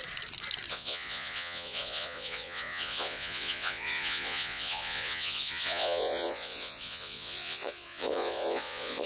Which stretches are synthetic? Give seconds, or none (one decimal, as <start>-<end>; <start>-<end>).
0.7-9.1